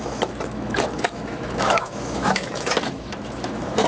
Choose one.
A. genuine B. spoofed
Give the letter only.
B